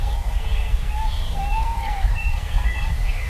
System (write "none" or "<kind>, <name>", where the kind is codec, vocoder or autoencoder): codec, SNAC